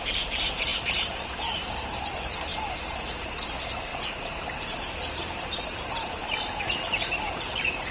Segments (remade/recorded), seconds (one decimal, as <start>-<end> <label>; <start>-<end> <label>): 0.0-2.5 remade; 2.5-3.2 recorded; 3.2-3.9 remade; 3.9-4.9 recorded; 4.9-6.2 remade; 6.2-7.2 recorded; 7.2-7.9 remade